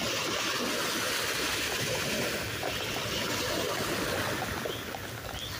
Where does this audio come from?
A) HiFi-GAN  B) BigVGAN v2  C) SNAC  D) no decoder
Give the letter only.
D